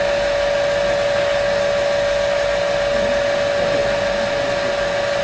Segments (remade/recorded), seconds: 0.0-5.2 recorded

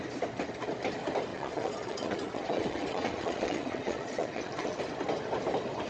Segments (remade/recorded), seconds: 0.0-1.3 recorded; 1.3-4.8 remade; 4.8-5.9 recorded

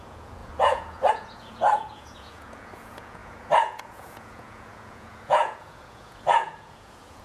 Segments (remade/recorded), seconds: 0.0-7.2 remade

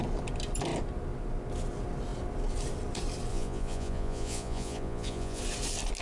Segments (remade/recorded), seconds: 0.0-3.3 recorded; 3.3-5.4 remade; 5.4-6.0 recorded